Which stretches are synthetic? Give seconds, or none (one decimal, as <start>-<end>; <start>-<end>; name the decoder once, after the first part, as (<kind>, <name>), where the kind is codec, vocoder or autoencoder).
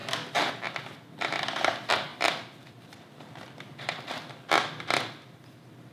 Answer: 0.0-0.5 (vocoder, BigVGAN v2); 2.1-5.9